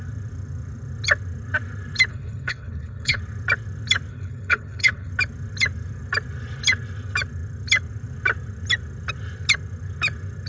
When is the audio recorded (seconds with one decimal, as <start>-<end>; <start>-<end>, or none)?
0.0-2.1; 3.2-4.1; 5.1-10.5

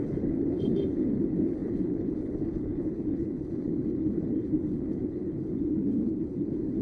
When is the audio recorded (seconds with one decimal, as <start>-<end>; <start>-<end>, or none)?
none

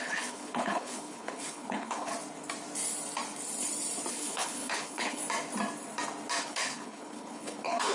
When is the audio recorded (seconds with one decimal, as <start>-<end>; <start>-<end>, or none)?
2.1-4.1; 5.2-6.4

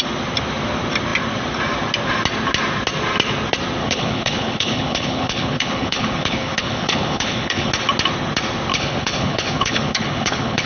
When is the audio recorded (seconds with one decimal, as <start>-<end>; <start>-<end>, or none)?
0.0-3.8; 7.7-8.7

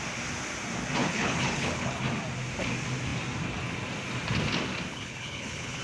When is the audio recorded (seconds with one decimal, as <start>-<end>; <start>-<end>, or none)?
0.0-1.0; 2.0-4.9

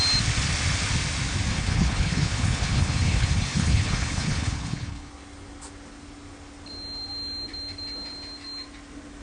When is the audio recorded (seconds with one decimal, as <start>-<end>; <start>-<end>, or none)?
0.0-1.5; 5.1-9.2

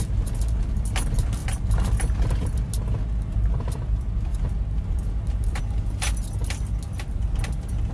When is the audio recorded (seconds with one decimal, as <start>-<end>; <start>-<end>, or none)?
0.0-7.9